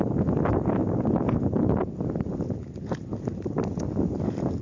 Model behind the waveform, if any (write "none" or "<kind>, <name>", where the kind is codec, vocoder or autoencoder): none